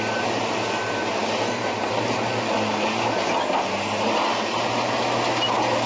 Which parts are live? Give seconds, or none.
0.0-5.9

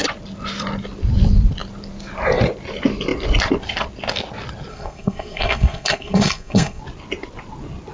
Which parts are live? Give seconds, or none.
0.0-4.7; 6.8-7.9

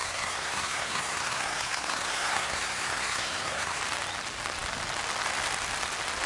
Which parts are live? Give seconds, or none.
3.8-6.3